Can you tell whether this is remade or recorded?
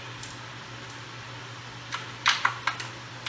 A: recorded